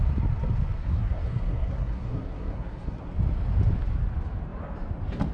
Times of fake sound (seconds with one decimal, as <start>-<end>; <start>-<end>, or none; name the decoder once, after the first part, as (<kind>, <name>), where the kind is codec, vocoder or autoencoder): 0.8-3.1 (codec, SNAC)